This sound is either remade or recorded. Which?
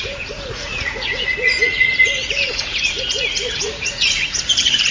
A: remade